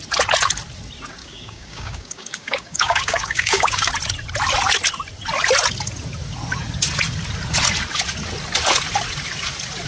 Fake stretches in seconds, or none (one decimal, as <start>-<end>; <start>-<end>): 1.2-3.9